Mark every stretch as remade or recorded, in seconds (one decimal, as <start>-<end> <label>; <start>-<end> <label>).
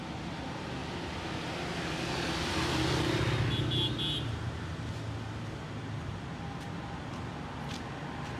0.0-8.4 recorded